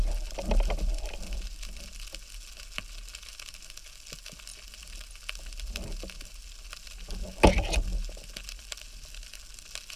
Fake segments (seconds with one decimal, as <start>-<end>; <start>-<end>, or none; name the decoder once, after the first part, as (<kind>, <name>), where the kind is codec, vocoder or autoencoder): none